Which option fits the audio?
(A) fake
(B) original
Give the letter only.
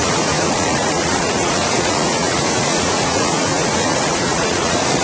A